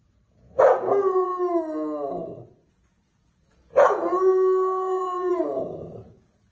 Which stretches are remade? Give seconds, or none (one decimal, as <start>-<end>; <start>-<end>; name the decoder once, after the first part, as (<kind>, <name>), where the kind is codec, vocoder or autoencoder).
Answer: 0.0-1.3 (vocoder, Vocos); 2.7-6.5